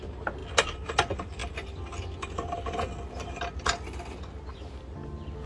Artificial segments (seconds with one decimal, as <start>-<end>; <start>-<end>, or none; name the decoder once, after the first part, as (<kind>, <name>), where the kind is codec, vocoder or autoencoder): none